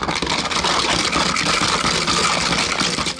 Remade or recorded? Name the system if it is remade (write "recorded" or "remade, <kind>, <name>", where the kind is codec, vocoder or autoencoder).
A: recorded